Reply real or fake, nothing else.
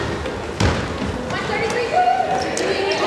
real